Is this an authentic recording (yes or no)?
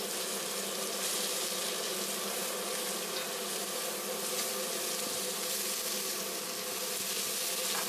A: yes